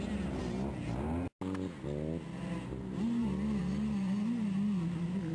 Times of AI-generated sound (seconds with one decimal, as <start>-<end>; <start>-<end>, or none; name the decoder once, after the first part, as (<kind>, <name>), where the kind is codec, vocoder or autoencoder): none